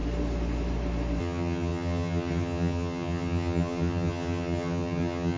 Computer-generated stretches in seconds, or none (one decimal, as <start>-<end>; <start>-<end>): 1.2-5.4